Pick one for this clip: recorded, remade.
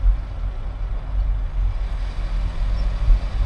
recorded